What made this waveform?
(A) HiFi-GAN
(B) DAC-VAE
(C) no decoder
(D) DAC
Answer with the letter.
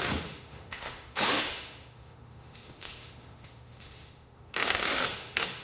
B